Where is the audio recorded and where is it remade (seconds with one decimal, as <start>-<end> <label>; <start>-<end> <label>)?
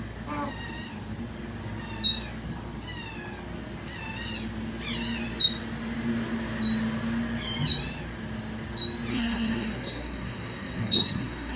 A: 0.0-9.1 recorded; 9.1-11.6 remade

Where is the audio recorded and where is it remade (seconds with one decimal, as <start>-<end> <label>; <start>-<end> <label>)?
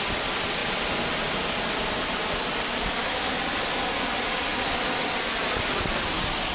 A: 0.0-6.5 recorded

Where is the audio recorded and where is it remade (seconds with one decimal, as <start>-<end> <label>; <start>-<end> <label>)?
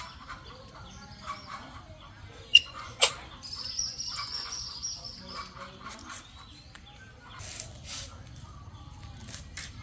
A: 0.0-2.5 recorded; 2.5-3.1 remade; 3.1-3.6 recorded; 3.6-5.2 remade; 5.2-9.8 recorded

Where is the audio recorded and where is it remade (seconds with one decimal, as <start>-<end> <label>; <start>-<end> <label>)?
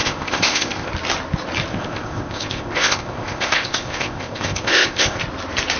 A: 0.0-0.9 remade; 0.9-1.7 recorded; 1.7-5.2 remade; 5.2-5.8 recorded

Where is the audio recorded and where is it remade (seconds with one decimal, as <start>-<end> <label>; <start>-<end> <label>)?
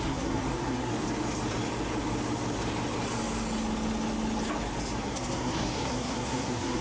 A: 0.0-0.9 remade; 0.9-5.0 recorded; 5.0-6.8 remade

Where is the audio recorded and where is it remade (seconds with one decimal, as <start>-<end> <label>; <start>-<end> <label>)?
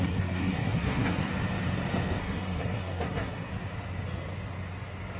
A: 0.0-1.3 remade; 1.3-2.2 recorded; 2.2-3.5 remade; 3.5-5.2 recorded